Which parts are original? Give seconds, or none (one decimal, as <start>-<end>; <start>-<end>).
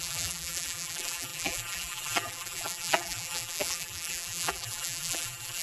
none